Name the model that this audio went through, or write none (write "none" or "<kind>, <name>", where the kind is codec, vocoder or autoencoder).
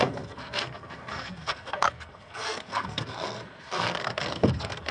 codec, SNAC